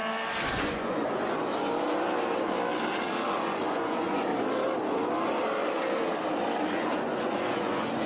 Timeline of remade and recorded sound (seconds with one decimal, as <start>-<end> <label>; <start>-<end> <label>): 0.0-0.5 recorded; 0.5-1.5 remade; 1.5-3.3 recorded; 3.3-4.3 remade; 4.3-6.7 recorded; 6.7-8.1 remade